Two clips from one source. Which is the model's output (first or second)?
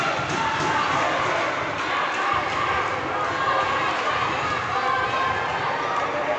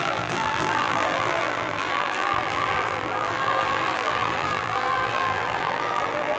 second